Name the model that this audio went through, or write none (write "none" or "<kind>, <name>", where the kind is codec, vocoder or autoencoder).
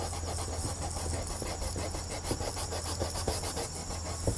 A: none